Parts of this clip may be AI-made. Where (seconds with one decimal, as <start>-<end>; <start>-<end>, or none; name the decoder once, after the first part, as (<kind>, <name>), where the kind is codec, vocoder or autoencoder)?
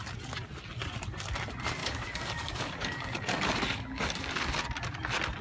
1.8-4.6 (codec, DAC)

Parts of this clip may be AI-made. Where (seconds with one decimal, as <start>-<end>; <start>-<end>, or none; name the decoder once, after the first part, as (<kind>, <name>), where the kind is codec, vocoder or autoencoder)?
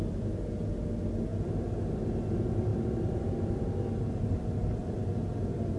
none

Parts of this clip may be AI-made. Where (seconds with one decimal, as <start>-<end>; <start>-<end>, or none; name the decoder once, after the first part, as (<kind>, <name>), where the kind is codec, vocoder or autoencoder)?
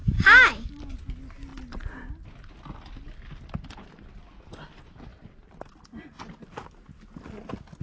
0.0-0.8 (codec, DAC)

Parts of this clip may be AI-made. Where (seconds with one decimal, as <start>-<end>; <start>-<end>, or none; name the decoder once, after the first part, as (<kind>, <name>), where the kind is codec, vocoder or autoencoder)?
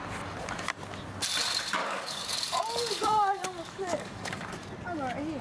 1.8-4.5 (codec, DAC)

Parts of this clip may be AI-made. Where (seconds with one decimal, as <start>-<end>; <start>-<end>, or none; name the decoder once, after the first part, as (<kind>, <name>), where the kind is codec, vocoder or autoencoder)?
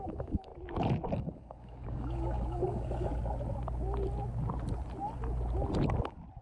0.0-0.5 (codec, DAC); 1.1-3.1